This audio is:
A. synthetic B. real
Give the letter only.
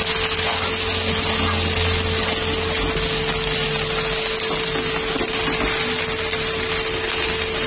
B